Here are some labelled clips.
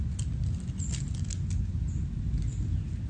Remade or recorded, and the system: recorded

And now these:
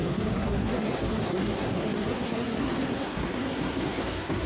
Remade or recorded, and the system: remade, codec, SNAC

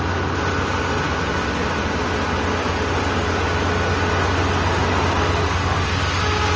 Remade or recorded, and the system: recorded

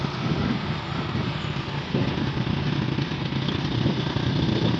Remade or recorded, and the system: recorded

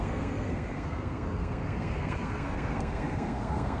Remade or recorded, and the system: remade, codec, SNAC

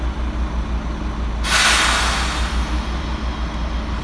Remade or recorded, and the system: recorded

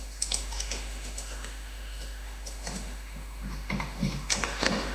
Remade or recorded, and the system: remade, autoencoder, DAC-VAE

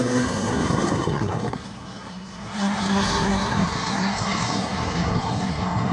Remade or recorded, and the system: remade, codec, SNAC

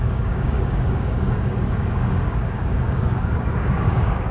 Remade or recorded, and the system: remade, codec, DAC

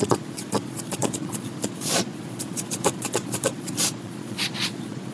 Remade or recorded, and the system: remade, vocoder, Vocos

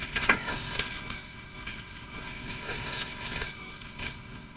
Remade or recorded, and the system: remade, codec, SNAC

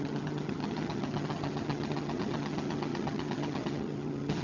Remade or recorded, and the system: remade, vocoder, HiFi-GAN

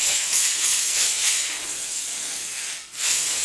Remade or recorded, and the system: remade, codec, SNAC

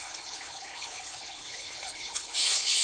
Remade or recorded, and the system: remade, codec, HILCodec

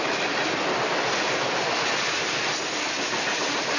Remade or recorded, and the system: recorded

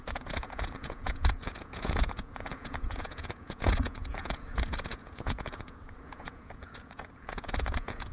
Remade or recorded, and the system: remade, vocoder, Vocos